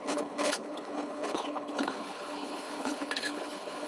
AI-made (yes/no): yes